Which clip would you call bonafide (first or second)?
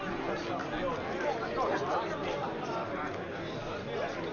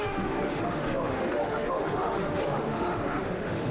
first